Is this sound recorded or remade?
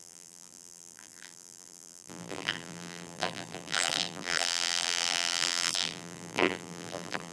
remade